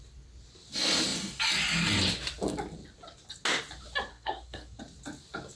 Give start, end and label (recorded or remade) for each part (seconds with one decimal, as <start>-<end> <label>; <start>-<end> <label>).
0.0-4.1 recorded; 4.1-4.8 remade; 4.8-5.6 recorded